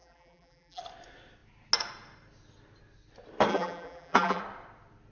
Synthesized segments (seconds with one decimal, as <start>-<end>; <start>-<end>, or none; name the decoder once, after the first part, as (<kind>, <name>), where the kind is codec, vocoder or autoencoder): 0.0-0.8 (vocoder, BigVGAN v2); 3.5-4.4